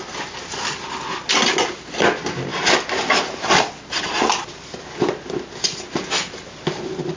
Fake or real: real